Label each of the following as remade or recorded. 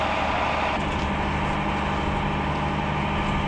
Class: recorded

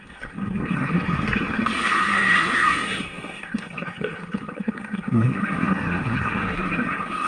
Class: remade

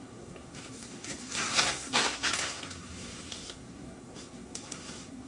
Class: remade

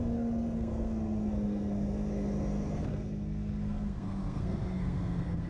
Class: remade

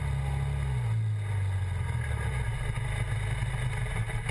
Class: recorded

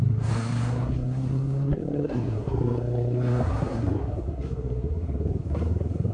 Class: remade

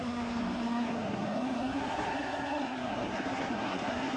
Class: remade